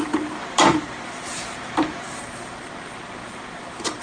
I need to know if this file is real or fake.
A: fake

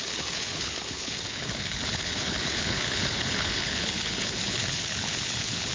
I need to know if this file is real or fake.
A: fake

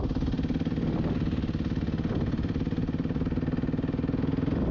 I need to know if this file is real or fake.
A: real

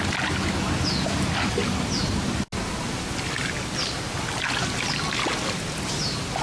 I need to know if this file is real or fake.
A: real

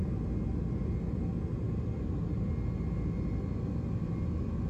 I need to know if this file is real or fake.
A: real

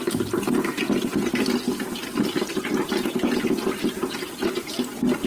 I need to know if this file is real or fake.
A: real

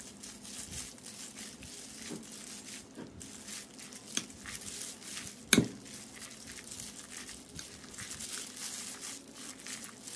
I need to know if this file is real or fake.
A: real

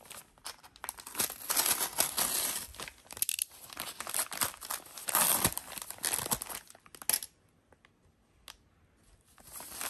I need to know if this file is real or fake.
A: real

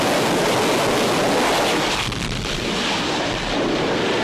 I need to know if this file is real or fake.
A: real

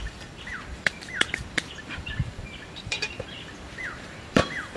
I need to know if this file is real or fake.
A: fake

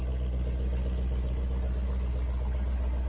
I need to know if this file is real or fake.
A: real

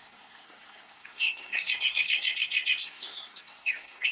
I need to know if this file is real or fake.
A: fake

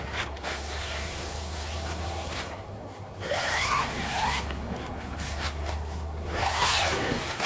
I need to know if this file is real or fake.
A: fake